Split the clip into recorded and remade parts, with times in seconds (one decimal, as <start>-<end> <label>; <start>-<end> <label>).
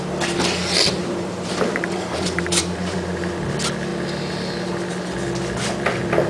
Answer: 0.0-1.0 recorded; 1.0-3.3 remade; 3.3-6.3 recorded